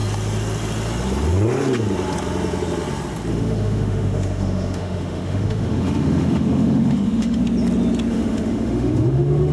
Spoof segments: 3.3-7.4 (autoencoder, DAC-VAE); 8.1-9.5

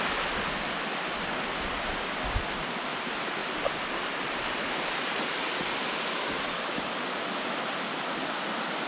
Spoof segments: none

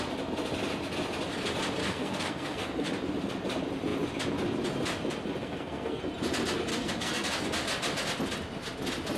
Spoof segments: 1.8-2.9 (codec, SNAC); 5.4-6.0; 6.7-7.4

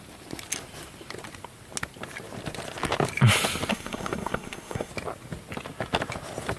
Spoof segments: 3.7-4.9 (codec, SNAC)